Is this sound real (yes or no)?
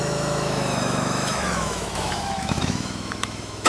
no